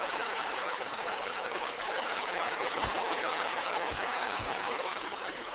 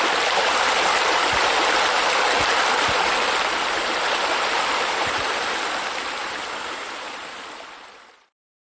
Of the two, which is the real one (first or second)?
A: second